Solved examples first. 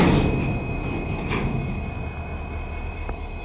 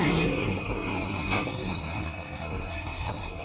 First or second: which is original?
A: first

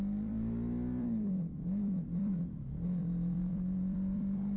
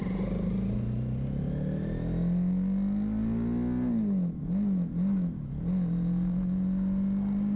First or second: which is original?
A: second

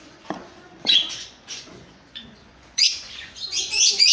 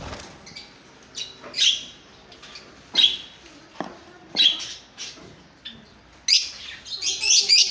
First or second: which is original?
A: second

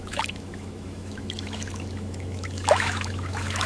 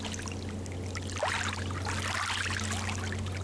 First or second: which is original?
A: second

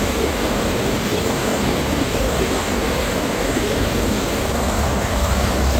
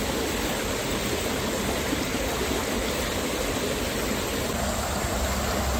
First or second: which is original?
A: second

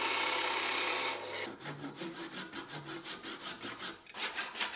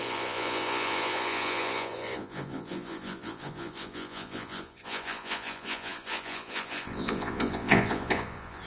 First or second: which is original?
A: first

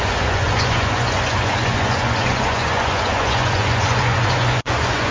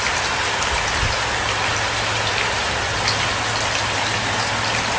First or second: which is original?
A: second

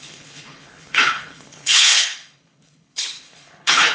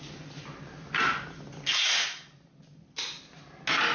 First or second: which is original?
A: second